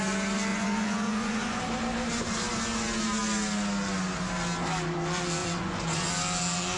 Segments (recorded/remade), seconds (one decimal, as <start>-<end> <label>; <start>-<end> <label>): 0.0-0.5 recorded; 0.5-1.6 remade; 1.6-5.4 recorded; 5.4-6.1 remade; 6.1-6.8 recorded